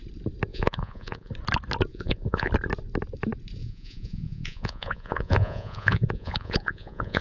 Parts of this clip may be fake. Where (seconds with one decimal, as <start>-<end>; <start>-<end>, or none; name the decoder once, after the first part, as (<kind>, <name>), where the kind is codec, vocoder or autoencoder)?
0.5-1.3 (vocoder, Vocos); 1.9-2.5; 3.6-7.2